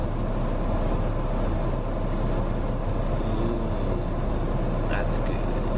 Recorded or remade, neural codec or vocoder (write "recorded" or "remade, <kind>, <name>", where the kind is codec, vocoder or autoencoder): recorded